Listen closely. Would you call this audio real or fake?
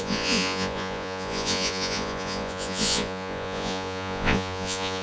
fake